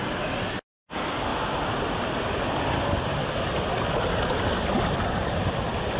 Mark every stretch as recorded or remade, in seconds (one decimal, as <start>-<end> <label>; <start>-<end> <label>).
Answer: 0.0-6.0 recorded